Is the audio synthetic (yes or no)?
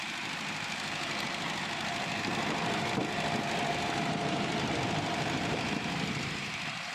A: yes